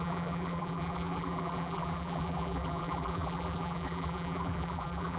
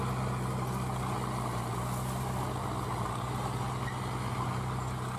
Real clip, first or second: second